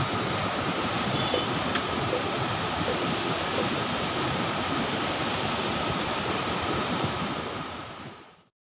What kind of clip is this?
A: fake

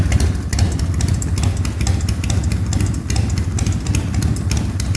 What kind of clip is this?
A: fake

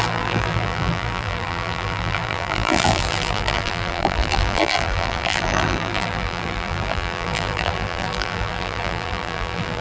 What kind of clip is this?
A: fake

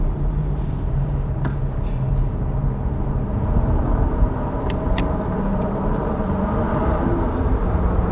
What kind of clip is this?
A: fake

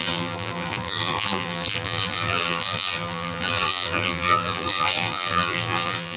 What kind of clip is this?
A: fake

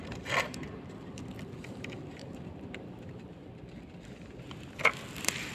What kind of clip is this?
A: fake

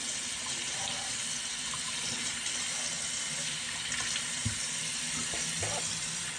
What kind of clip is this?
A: real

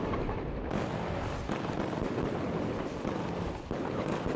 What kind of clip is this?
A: fake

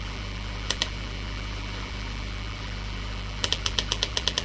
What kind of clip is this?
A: fake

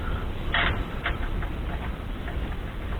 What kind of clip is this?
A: fake